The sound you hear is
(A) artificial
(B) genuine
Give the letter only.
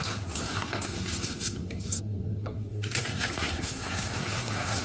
A